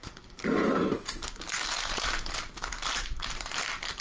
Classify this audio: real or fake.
fake